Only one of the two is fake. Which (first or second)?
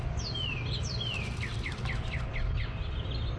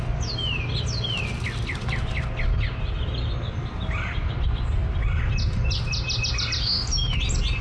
first